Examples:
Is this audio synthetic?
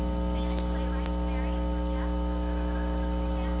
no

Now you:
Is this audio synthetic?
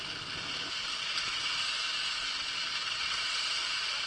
no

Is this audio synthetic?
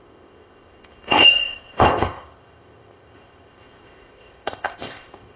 yes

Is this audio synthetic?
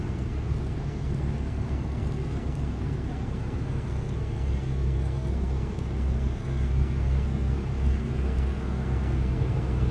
yes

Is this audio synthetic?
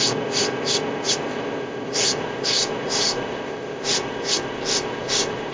yes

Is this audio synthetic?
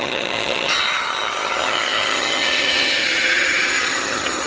yes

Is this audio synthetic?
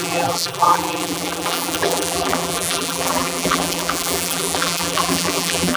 yes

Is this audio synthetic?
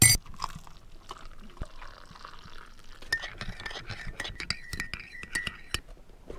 no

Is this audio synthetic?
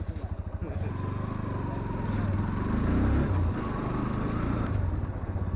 no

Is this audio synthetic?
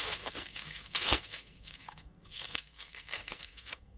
yes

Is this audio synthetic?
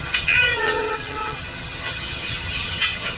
yes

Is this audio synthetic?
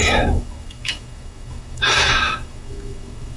yes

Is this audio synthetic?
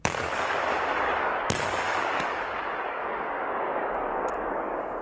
yes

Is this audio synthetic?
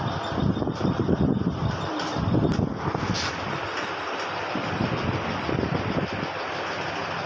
no